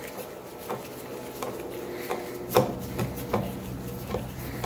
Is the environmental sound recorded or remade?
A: recorded